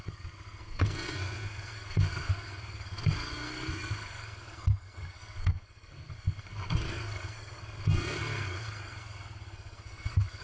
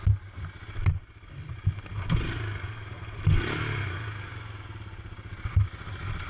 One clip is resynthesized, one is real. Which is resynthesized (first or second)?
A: first